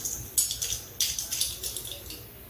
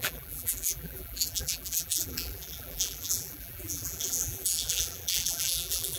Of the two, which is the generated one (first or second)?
second